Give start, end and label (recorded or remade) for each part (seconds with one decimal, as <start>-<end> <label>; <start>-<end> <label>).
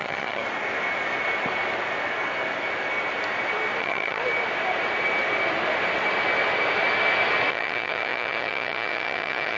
0.0-0.4 remade; 0.4-3.8 recorded; 3.8-4.2 remade; 4.2-7.5 recorded; 7.5-9.6 remade